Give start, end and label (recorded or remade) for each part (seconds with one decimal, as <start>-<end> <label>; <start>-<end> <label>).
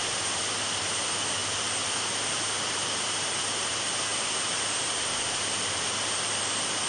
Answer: 0.0-1.4 remade; 1.4-2.7 recorded; 2.7-6.9 remade